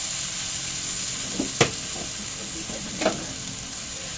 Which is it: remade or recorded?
recorded